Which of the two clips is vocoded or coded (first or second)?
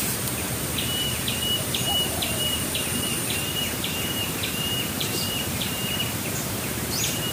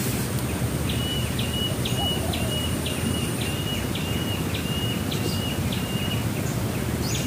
first